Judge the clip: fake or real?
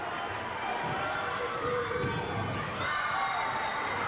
real